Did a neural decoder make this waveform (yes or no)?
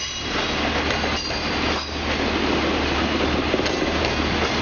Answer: no